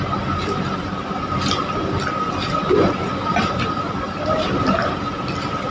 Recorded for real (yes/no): yes